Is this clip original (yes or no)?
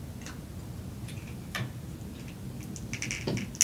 yes